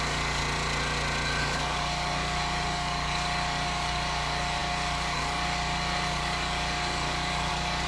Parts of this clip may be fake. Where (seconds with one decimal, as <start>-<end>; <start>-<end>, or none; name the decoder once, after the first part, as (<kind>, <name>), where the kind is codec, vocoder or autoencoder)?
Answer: 0.0-0.4 (codec, DAC); 1.4-7.9